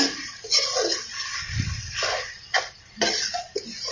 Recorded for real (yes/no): yes